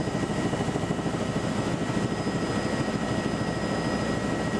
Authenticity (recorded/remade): recorded